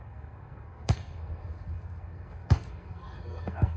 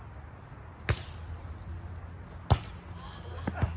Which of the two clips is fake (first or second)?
first